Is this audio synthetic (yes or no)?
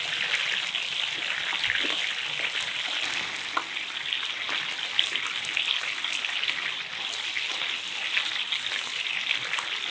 no